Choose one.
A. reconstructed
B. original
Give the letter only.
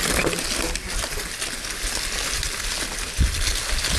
B